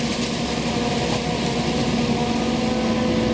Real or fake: real